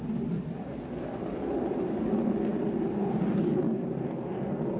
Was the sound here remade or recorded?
recorded